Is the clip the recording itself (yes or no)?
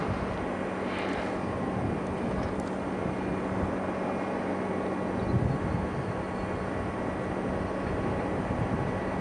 yes